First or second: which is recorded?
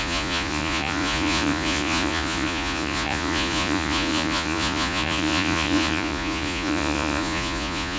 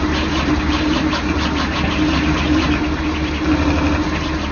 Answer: second